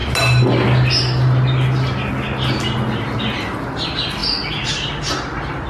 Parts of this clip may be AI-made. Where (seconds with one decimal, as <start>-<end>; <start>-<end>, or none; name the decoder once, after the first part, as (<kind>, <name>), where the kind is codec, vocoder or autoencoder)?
none